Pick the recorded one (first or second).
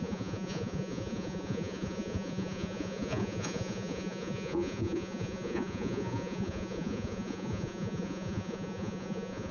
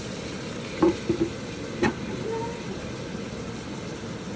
second